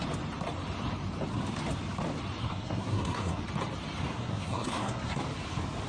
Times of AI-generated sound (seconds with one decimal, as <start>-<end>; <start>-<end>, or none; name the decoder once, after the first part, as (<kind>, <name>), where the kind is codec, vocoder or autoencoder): 2.4-3.4 (codec, SNAC); 4.0-5.2